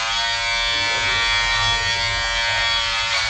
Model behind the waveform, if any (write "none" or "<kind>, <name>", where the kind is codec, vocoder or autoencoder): none